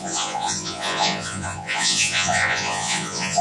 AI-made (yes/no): yes